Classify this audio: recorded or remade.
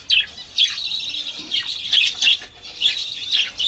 recorded